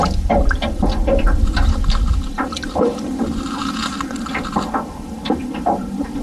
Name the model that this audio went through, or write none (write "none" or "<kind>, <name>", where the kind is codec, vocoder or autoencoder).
none